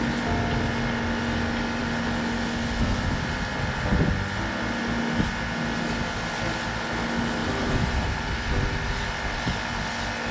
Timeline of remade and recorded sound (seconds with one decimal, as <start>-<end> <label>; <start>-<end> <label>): 0.0-7.4 recorded; 7.4-9.1 remade; 9.1-10.3 recorded